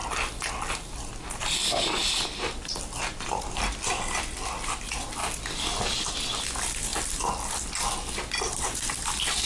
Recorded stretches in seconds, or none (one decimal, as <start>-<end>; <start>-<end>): 0.0-9.5